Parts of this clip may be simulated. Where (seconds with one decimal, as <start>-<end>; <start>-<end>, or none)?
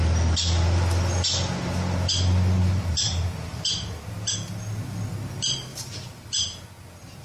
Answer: 2.6-3.6; 5.7-6.6